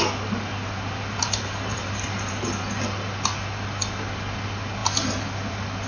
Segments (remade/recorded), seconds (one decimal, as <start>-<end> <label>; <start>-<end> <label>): 0.0-0.6 recorded; 0.6-2.8 remade; 2.8-5.9 recorded

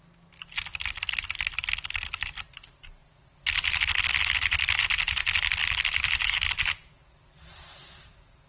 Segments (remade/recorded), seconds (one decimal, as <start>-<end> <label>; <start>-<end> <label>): 0.0-0.7 recorded; 0.7-1.7 remade; 1.7-3.0 recorded; 3.0-3.8 remade; 3.8-5.6 recorded; 5.6-6.7 remade; 6.7-8.5 recorded

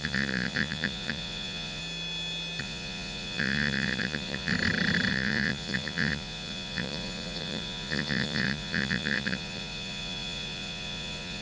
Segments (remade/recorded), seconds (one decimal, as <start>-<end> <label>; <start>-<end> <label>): 0.0-1.8 remade; 1.8-2.6 recorded; 2.6-4.5 remade; 4.5-5.1 recorded; 5.1-11.4 remade

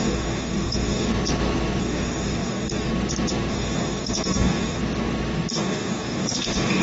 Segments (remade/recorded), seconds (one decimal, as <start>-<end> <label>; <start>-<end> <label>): 0.0-1.1 remade; 1.1-1.8 recorded; 1.8-2.9 remade; 2.9-3.5 recorded; 3.5-4.8 remade; 4.8-5.5 recorded; 5.5-6.8 remade

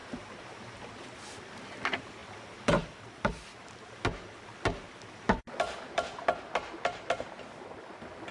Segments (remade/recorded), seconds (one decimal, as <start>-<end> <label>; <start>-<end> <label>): 0.0-8.3 recorded